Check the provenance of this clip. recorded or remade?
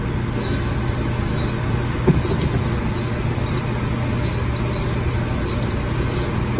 recorded